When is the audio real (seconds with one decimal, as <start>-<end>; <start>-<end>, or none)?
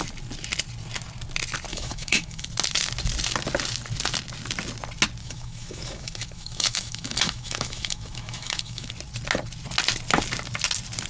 0.0-1.7; 2.5-5.2; 8.9-11.1